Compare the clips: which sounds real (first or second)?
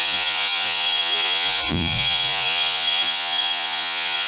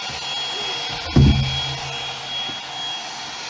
second